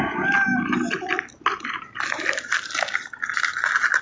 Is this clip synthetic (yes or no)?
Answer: no